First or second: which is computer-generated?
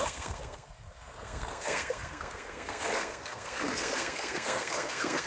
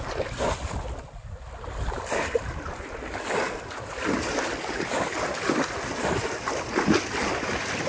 first